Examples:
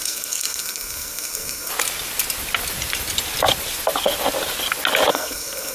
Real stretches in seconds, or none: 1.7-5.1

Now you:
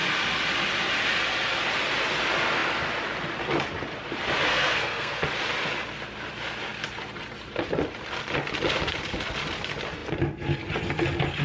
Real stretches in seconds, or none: 0.0-4.5; 5.2-11.4

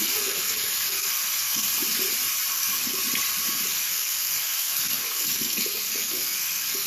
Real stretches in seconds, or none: 1.7-2.5; 3.0-3.7

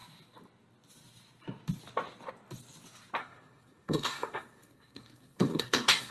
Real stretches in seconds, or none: 0.0-3.2